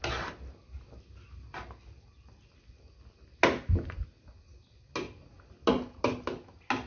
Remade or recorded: recorded